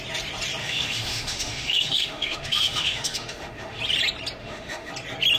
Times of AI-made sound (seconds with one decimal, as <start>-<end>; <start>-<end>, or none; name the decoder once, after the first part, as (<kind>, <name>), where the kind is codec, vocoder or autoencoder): 0.6-3.8 (autoencoder, DAC-VAE); 4.4-4.9